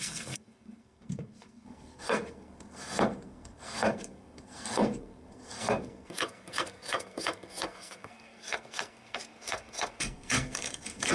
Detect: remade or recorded remade